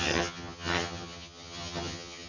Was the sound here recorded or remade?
remade